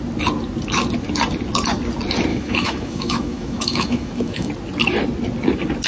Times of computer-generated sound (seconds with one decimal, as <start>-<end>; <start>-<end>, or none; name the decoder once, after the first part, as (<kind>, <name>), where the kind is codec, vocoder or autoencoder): 2.3-4.5 (autoencoder, DAC-VAE)